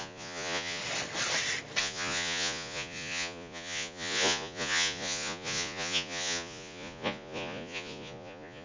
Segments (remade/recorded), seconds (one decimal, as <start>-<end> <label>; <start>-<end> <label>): 0.0-0.8 remade; 0.8-1.8 recorded; 1.8-8.6 remade